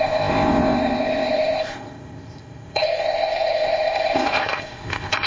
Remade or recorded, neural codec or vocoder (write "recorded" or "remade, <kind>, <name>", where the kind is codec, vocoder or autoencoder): remade, codec, ZipCodec